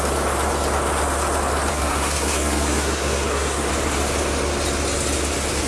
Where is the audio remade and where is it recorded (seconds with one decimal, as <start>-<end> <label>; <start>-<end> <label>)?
0.0-1.7 recorded; 1.7-3.7 remade; 3.7-5.7 recorded